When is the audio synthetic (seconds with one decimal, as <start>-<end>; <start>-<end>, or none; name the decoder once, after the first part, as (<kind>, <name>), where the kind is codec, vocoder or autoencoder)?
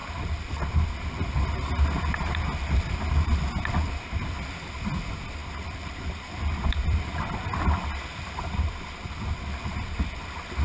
5.4-8.9 (vocoder, BigVGAN v2)